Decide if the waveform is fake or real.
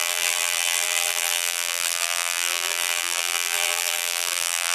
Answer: fake